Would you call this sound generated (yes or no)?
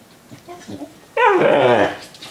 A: no